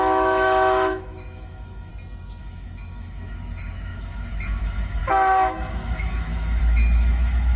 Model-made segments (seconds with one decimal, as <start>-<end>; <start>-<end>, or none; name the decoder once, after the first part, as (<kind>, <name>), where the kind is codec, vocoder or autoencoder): 0.0-1.9 (autoencoder, DAC-VAE); 2.4-7.6